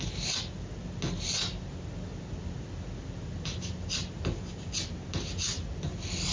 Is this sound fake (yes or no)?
no